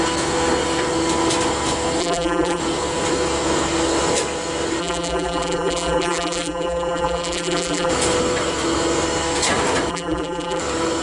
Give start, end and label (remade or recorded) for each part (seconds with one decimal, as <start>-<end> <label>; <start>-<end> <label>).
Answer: 0.0-2.0 recorded; 2.0-2.6 remade; 2.6-4.8 recorded; 4.8-7.9 remade; 7.9-9.9 recorded; 9.9-10.6 remade; 10.6-11.0 recorded